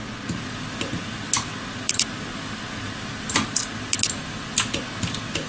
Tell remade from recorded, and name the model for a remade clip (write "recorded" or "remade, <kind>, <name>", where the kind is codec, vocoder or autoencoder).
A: recorded